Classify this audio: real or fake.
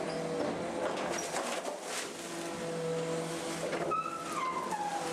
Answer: real